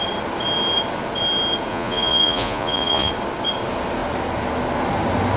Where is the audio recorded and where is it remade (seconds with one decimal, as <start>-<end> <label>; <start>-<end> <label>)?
0.0-1.7 recorded; 1.7-3.1 remade; 3.1-5.4 recorded